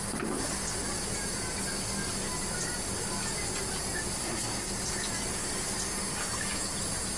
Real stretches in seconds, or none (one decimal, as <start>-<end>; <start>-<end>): 0.0-4.2; 4.7-7.2